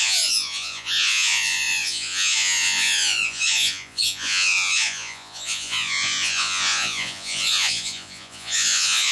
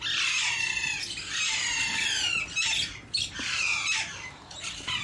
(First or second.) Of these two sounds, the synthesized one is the first